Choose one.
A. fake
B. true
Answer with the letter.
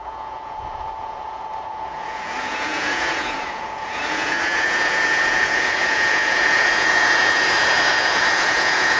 A